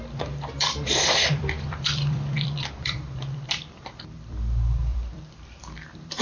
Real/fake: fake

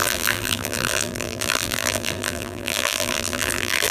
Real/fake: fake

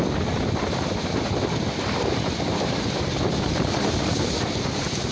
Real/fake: fake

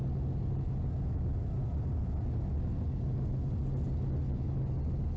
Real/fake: real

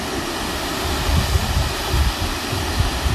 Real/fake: real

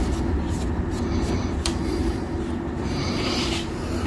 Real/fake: real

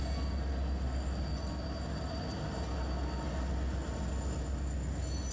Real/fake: real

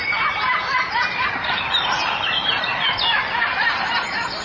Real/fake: fake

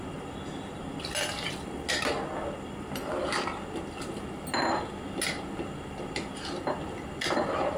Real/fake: real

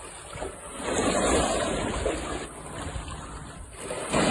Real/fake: real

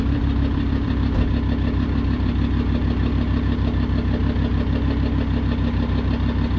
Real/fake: fake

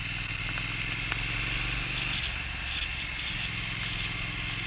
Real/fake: real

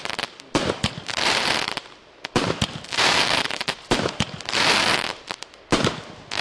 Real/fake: fake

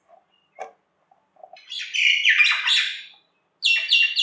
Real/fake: real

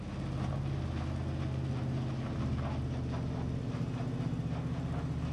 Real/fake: real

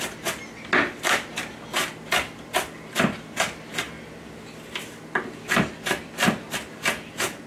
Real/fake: real